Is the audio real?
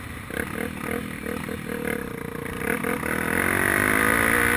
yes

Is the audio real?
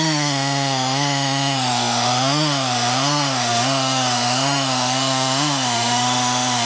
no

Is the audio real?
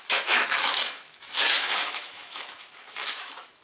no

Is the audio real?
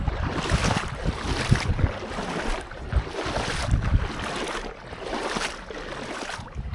yes